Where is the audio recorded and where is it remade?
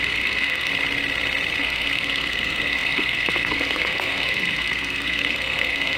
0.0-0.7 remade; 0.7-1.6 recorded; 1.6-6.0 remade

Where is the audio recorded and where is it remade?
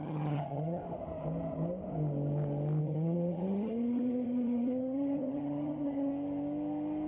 0.0-0.8 remade; 0.8-2.8 recorded; 2.8-6.1 remade; 6.1-7.1 recorded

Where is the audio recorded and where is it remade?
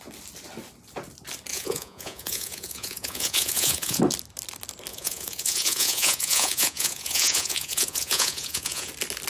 0.0-1.5 recorded; 1.5-4.0 remade; 4.0-4.9 recorded; 4.9-8.9 remade; 8.9-9.3 recorded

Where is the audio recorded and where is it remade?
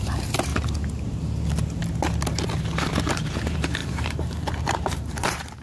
0.0-0.5 remade; 0.5-3.1 recorded; 3.1-5.6 remade